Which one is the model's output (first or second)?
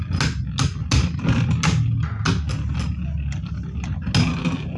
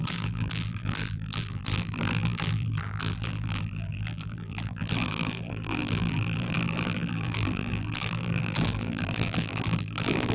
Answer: second